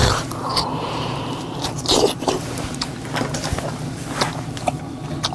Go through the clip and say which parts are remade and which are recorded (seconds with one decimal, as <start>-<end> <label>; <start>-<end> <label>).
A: 0.0-2.9 remade; 2.9-5.3 recorded